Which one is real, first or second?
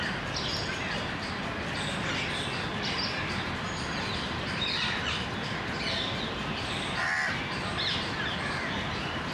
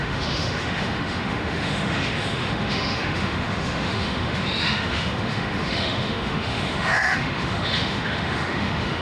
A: first